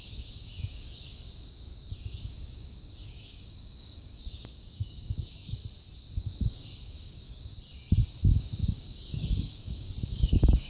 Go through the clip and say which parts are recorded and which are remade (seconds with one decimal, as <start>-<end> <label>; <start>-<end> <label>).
0.0-5.6 remade; 5.6-6.1 recorded; 6.1-7.5 remade; 7.5-8.4 recorded; 8.4-10.7 remade